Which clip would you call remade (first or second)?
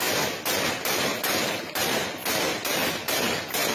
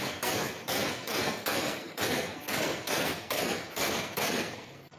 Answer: second